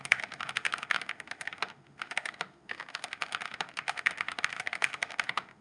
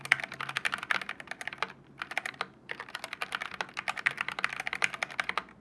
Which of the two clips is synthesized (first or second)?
first